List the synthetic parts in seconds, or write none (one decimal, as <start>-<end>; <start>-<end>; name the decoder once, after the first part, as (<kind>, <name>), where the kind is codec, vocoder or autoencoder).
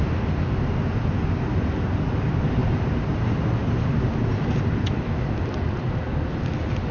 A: none